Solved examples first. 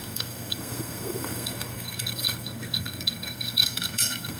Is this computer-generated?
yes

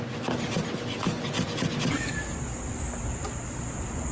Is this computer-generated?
no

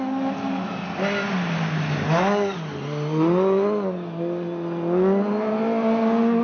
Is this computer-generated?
no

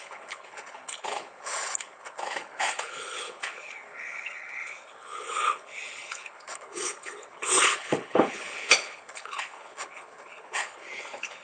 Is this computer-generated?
yes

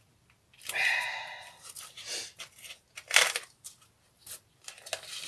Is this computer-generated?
no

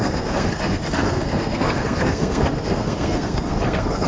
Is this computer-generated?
yes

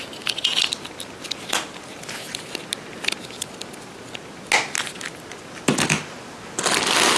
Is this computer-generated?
no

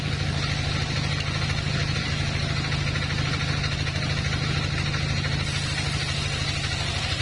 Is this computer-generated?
no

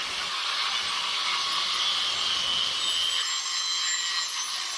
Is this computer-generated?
no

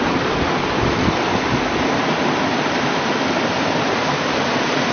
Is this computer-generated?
no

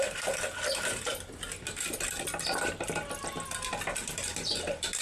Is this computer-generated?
no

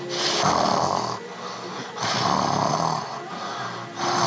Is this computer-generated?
no